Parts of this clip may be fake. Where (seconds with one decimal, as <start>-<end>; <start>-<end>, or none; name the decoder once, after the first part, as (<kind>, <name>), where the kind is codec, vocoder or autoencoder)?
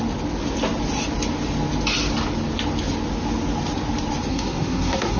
4.3-5.2 (codec, SNAC)